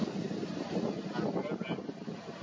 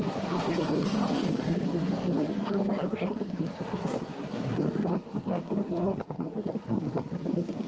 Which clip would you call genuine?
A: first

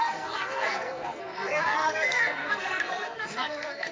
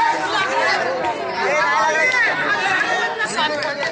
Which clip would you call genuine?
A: second